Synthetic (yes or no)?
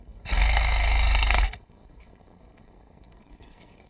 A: yes